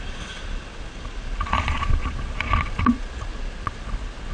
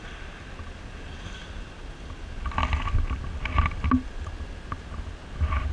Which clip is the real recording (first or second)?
second